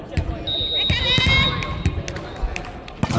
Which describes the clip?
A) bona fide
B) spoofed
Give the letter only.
A